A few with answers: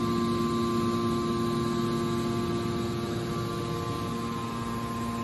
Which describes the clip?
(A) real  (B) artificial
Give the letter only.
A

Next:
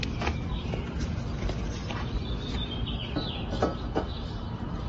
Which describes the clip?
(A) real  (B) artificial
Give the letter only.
A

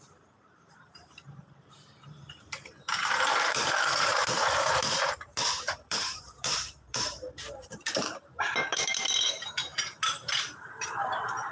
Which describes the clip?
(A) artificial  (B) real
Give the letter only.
A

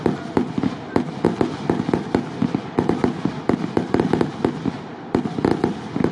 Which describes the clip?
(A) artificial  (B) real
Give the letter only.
B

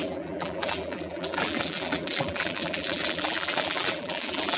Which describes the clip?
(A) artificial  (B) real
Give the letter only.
A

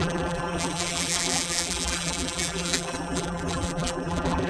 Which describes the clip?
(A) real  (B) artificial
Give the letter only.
B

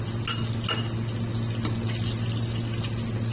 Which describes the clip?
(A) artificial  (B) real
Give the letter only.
B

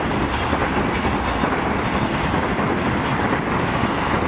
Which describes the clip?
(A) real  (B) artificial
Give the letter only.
A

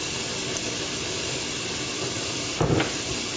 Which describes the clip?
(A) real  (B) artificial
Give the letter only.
A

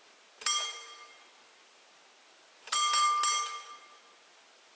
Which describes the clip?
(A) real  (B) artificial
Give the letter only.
A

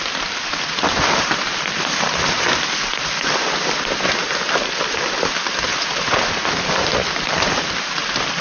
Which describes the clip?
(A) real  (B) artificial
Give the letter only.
B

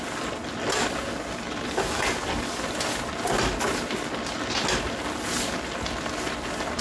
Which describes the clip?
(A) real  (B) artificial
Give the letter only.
A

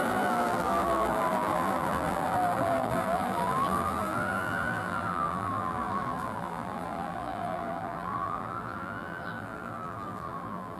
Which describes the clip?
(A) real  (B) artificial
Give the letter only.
B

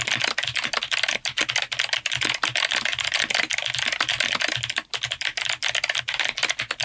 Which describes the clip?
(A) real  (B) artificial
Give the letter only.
A